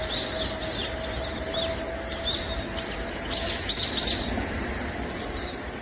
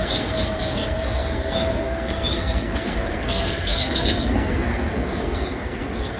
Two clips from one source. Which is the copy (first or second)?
second